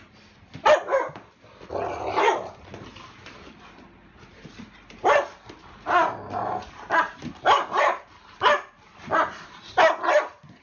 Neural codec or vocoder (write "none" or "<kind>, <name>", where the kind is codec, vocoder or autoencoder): none